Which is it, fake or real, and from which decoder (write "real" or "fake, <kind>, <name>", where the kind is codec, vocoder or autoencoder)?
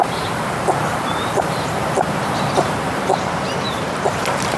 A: fake, vocoder, BigVGAN v2